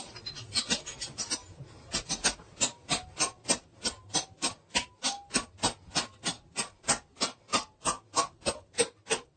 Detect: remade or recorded recorded